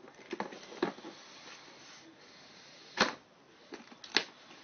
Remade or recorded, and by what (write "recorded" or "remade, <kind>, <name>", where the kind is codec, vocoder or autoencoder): recorded